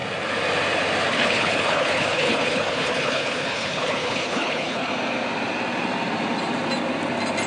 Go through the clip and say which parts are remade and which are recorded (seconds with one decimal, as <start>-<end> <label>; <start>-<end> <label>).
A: 0.0-1.1 recorded; 1.1-4.9 remade; 4.9-7.5 recorded